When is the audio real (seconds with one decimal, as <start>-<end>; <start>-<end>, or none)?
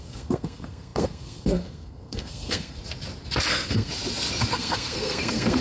2.8-3.5; 3.9-4.5